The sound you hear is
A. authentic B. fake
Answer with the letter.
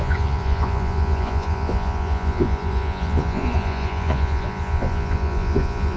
B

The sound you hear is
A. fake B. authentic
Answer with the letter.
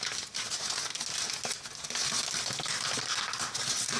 B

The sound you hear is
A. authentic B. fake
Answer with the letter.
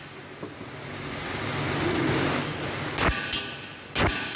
A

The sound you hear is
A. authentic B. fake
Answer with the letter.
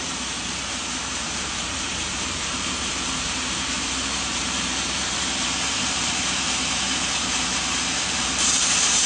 B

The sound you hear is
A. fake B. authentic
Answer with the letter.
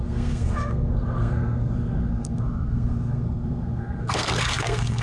A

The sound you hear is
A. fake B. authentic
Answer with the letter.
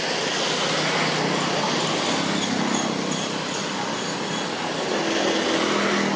B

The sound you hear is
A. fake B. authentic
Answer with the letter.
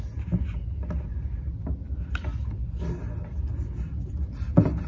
B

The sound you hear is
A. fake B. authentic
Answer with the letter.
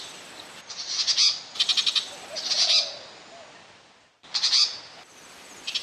B